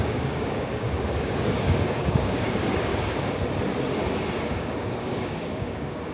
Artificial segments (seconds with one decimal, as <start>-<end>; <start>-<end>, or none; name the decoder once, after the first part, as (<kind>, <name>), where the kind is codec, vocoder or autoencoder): 0.0-2.9 (codec, DAC); 4.4-6.1